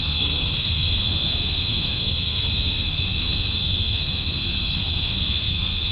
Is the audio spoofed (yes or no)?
yes